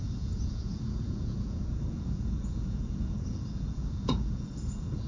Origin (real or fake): fake